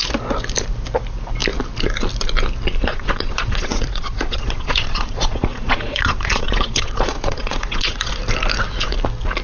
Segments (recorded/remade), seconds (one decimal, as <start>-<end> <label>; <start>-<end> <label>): 0.0-2.9 recorded; 2.9-8.1 remade; 8.1-9.4 recorded